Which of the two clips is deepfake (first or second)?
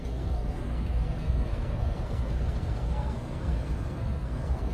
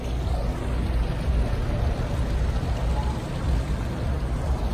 first